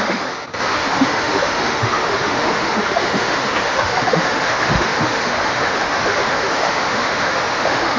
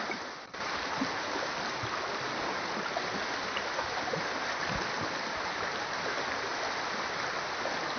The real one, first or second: second